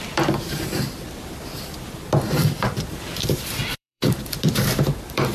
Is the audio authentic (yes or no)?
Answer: no